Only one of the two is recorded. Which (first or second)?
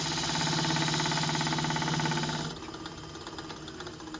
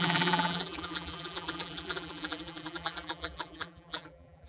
first